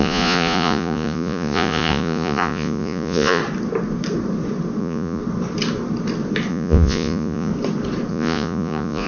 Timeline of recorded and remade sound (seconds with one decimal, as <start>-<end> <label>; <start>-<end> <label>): 0.0-3.4 remade; 3.4-4.8 recorded; 4.8-5.2 remade; 5.2-6.5 recorded; 6.5-7.5 remade; 7.5-8.1 recorded; 8.1-9.1 remade